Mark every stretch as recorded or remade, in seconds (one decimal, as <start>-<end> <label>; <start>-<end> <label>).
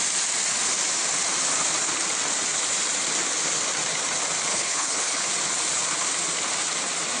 0.0-4.5 recorded; 4.5-5.3 remade; 5.3-7.2 recorded